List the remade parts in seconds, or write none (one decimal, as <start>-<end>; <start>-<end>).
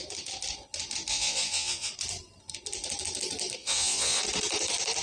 1.1-1.9; 3.6-4.2